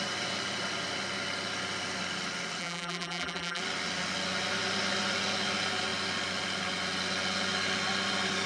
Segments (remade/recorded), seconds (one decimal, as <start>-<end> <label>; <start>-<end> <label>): 0.0-2.6 recorded; 2.6-3.6 remade; 3.6-8.5 recorded